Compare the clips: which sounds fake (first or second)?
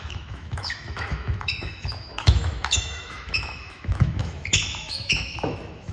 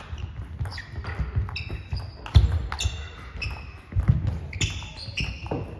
first